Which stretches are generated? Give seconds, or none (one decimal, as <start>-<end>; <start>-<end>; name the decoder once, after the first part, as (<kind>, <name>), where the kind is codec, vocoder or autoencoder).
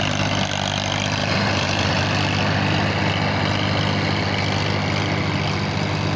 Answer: 1.2-2.0 (vocoder, BigVGAN v2)